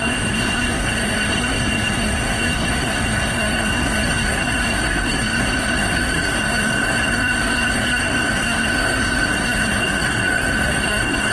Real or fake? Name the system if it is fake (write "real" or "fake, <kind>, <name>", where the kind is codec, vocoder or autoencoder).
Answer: fake, codec, SNAC